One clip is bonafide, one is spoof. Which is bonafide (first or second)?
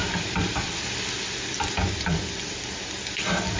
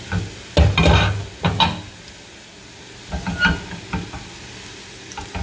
second